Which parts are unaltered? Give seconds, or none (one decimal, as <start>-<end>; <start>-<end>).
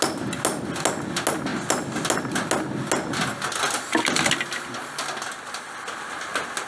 0.0-6.7